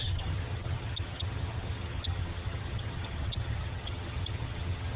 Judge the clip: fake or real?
fake